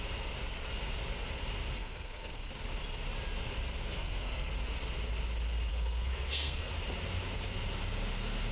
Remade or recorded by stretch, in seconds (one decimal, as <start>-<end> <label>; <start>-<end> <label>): 0.0-1.7 recorded; 1.7-2.5 remade; 2.5-3.9 recorded; 3.9-4.5 remade; 4.5-5.7 recorded; 5.7-6.7 remade; 6.7-8.5 recorded